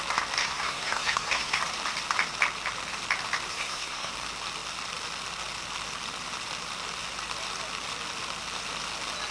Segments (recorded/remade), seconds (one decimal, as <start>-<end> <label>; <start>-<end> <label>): 0.0-0.4 recorded; 0.4-1.6 remade; 1.6-3.5 recorded; 3.5-4.1 remade; 4.1-9.3 recorded